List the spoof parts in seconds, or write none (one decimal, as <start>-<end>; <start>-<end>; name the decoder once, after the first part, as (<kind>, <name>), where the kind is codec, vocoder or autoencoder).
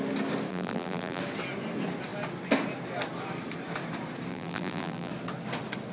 0.5-1.2 (vocoder, BigVGAN v2); 4.3-5.1